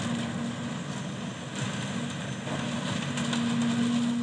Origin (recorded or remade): recorded